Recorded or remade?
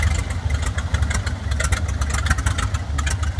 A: recorded